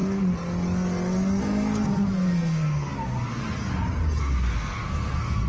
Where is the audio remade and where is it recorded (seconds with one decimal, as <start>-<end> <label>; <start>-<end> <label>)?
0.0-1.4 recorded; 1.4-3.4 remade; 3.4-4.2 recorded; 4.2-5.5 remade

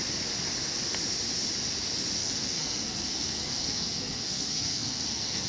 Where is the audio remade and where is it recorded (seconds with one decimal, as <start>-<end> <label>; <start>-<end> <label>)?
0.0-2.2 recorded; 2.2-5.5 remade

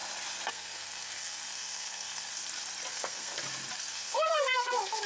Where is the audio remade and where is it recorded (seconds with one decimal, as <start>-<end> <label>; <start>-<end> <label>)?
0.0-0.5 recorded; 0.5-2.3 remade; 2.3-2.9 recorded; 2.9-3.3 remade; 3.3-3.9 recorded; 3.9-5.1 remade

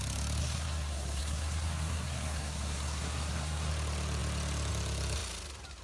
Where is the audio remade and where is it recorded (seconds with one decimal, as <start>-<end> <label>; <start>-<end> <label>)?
0.0-0.4 recorded; 0.4-3.7 remade; 3.7-5.8 recorded